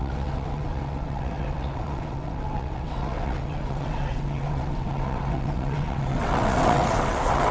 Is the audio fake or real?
fake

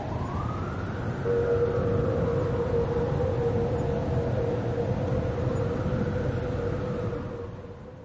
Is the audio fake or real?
real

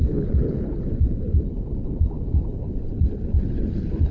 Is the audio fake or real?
fake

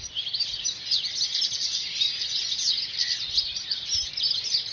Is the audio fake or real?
real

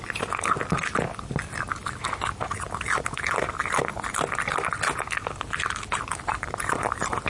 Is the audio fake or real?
real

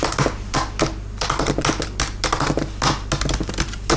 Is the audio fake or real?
real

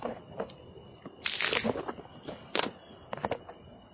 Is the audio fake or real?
real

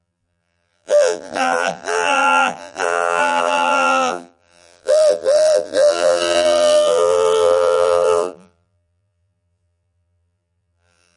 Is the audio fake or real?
fake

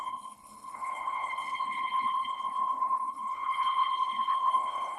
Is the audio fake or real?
fake